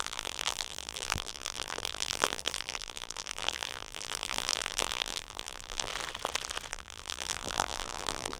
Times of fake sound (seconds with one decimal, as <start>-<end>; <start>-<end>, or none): 0.0-5.9; 6.7-8.4